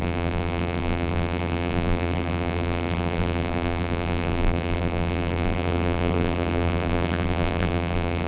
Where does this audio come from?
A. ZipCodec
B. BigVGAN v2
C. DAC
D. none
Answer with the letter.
B